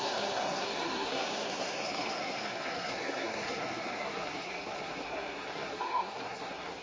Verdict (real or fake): fake